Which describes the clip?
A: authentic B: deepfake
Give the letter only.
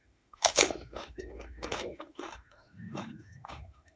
B